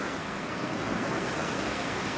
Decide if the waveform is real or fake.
fake